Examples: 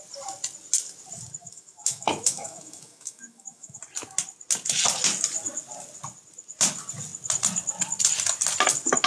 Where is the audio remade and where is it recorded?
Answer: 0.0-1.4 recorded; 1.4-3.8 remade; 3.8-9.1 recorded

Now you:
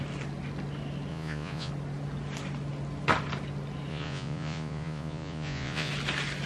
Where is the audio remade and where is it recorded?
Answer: 0.0-1.1 recorded; 1.1-1.7 remade; 1.7-3.9 recorded; 3.9-5.9 remade; 5.9-6.5 recorded

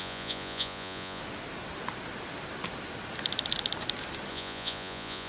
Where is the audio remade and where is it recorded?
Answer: 0.0-1.2 remade; 1.2-4.3 recorded; 4.3-5.3 remade

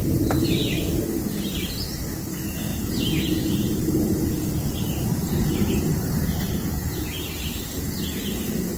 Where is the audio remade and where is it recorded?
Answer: 0.0-1.1 remade; 1.1-2.7 recorded; 2.7-7.8 remade; 7.8-8.8 recorded

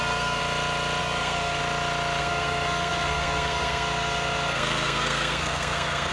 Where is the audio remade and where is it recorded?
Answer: 0.0-0.4 remade; 0.4-1.0 recorded; 1.0-1.6 remade; 1.6-2.2 recorded; 2.2-6.1 remade

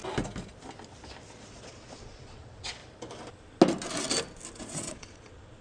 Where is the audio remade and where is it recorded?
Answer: 0.0-1.4 recorded; 1.4-2.8 remade; 2.8-4.6 recorded; 4.6-5.6 remade